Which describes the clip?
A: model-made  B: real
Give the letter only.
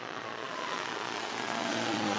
A